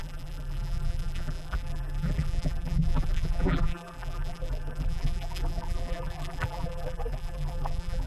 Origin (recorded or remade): remade